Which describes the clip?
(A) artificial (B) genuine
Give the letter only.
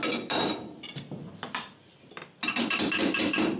A